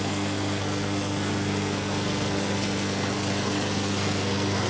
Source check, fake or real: fake